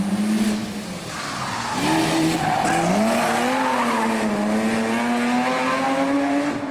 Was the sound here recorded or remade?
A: recorded